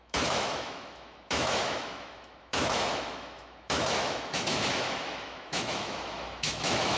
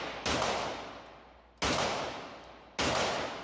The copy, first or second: first